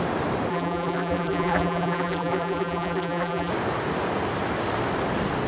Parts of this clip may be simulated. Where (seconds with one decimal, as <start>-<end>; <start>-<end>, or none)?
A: 0.5-3.5